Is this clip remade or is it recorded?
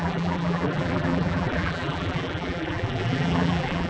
remade